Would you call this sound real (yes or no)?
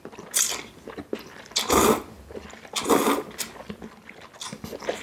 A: yes